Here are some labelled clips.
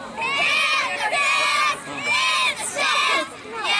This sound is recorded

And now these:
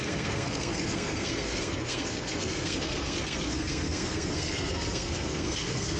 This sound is remade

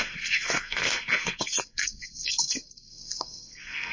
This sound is remade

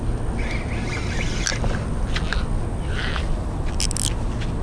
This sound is recorded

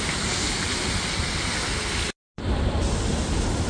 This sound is recorded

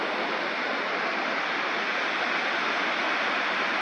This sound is recorded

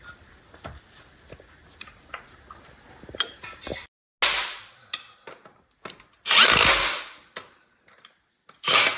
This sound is recorded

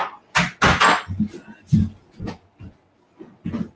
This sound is recorded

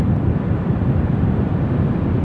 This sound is recorded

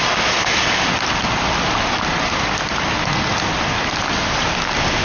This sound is recorded